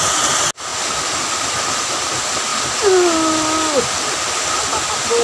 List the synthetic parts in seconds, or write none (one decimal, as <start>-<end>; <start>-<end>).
none